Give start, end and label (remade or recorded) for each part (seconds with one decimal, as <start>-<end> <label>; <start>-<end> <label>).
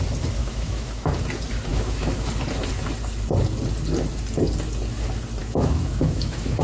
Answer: 0.0-0.4 recorded; 0.4-1.1 remade; 1.1-1.7 recorded; 1.7-2.3 remade; 2.3-5.4 recorded; 5.4-6.6 remade